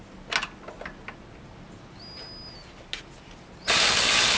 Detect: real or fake real